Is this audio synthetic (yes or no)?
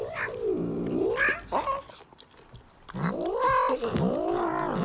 no